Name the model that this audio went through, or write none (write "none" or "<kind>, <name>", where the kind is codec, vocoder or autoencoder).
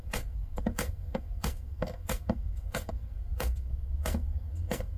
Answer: codec, SNAC